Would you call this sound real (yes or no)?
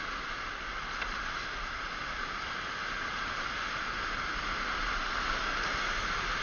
yes